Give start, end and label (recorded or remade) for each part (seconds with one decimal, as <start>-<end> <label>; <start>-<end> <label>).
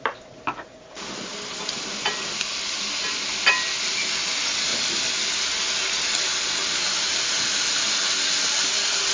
0.0-9.1 recorded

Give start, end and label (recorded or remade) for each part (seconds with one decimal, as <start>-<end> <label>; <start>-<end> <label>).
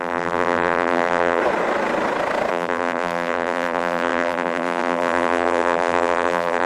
0.0-1.4 remade; 1.4-2.5 recorded; 2.5-6.7 remade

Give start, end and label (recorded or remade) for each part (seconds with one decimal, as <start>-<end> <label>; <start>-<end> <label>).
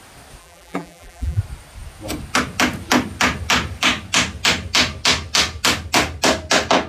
0.0-0.4 recorded; 0.4-1.4 remade; 1.4-6.9 recorded